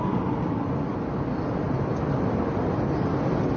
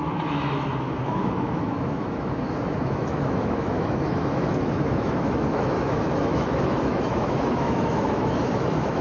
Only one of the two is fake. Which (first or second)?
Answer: second